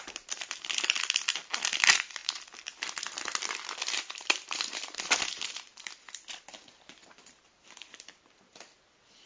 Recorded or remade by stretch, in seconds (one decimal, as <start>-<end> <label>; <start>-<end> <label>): 0.0-9.3 remade